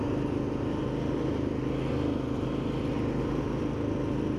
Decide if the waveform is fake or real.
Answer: real